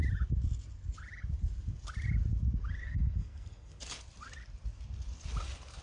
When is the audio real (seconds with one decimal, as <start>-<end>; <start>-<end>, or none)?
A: 0.0-2.8; 3.8-5.8